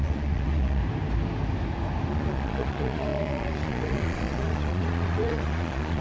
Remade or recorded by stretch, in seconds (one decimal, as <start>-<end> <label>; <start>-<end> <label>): 0.0-0.8 remade; 0.8-2.1 recorded; 2.1-6.0 remade